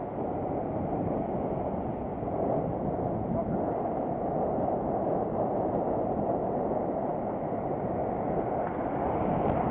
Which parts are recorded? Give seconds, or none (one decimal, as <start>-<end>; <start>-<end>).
0.0-9.7